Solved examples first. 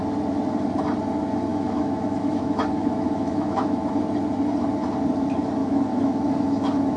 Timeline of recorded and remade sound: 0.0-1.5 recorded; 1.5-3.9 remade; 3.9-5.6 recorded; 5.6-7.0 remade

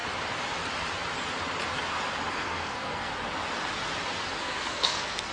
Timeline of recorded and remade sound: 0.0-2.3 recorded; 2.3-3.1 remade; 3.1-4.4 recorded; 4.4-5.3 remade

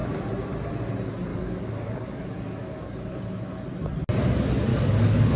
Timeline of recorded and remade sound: 0.0-1.3 recorded; 1.3-3.2 remade; 3.2-4.7 recorded; 4.7-5.4 remade

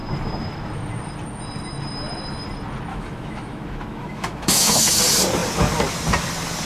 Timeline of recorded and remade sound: 0.0-2.9 recorded; 2.9-5.0 remade; 5.0-6.6 recorded

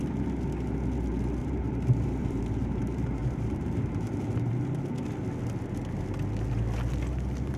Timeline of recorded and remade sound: 0.0-1.4 recorded; 1.4-2.4 remade; 2.4-2.8 recorded; 2.8-4.5 remade; 4.5-7.6 recorded

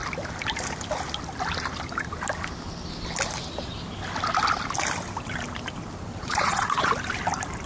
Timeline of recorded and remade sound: 0.0-6.1 recorded; 6.1-6.9 remade; 6.9-7.7 recorded

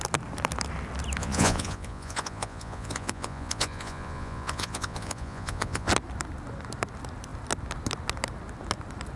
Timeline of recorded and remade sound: 0.0-1.2 recorded; 1.2-5.9 remade; 5.9-9.2 recorded